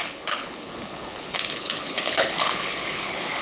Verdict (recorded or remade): remade